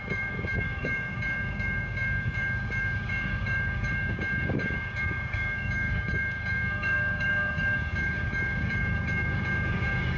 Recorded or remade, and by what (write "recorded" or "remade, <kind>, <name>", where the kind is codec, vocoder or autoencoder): remade, codec, DAC